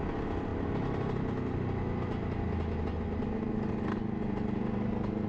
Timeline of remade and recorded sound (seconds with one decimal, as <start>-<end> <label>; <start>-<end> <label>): 0.0-5.3 recorded